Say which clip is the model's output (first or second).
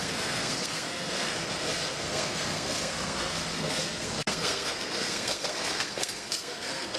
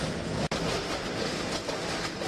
first